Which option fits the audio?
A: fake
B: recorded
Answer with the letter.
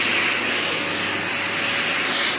B